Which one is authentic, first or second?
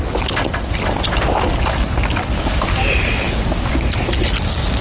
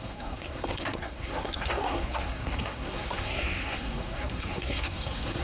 first